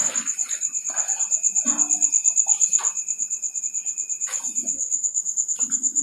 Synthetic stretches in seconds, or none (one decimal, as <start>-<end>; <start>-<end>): 4.7-5.2

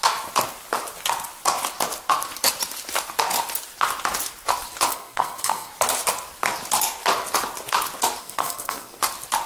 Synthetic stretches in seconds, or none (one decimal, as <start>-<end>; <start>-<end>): 4.9-5.7; 8.2-9.0

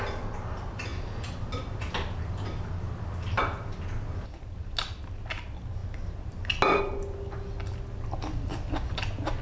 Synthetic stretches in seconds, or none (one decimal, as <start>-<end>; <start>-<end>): none